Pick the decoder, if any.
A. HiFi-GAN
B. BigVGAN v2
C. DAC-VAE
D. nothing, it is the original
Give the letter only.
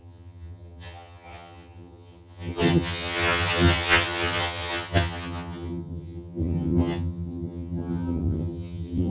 A